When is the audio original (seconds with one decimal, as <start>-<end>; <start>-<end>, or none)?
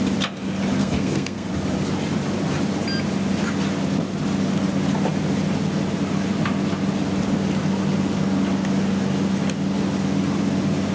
0.0-0.8; 1.5-10.9